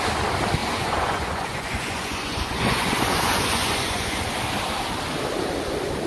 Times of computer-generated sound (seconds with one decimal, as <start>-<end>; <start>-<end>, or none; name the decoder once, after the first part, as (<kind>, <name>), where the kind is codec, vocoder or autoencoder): 0.6-4.2 (vocoder, Vocos)